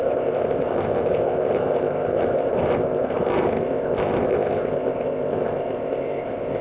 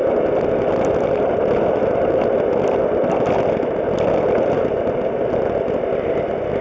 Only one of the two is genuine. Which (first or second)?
second